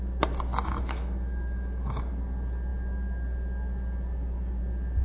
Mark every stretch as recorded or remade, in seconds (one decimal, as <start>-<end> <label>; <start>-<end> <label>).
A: 0.0-0.5 recorded; 0.5-2.0 remade; 2.0-5.0 recorded